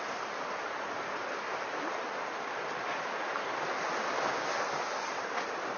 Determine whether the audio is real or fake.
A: real